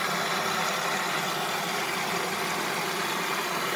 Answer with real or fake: real